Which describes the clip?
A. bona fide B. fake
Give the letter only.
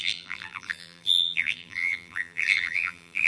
B